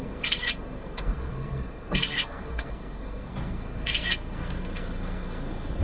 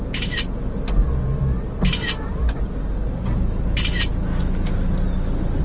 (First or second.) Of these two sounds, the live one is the second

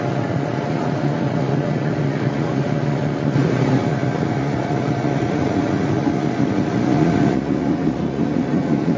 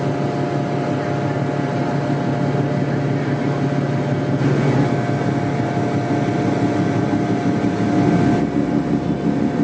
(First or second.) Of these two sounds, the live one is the second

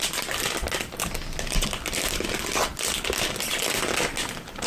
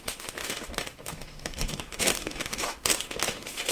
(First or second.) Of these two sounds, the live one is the first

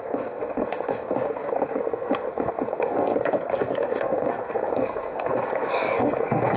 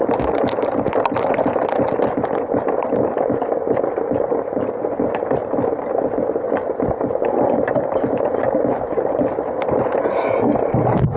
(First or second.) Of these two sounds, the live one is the second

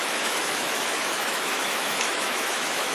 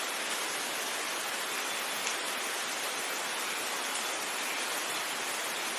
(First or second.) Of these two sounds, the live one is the second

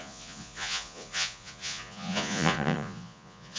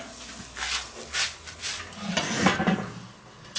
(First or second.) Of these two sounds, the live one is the second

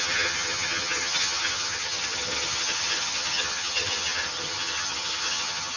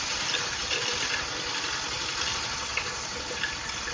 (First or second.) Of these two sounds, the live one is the second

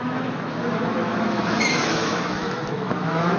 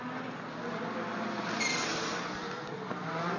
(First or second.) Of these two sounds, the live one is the second